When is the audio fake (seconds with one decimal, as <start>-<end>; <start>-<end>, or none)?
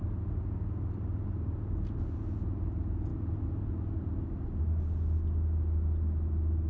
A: none